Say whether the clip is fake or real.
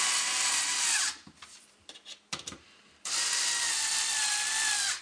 fake